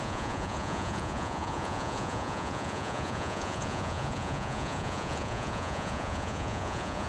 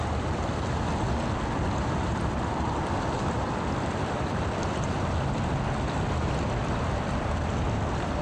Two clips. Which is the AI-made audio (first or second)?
first